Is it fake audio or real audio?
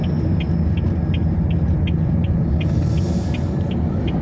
real